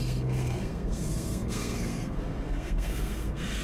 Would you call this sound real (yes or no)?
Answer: no